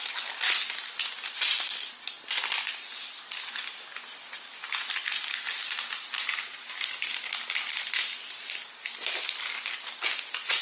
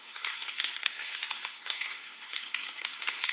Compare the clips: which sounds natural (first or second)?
first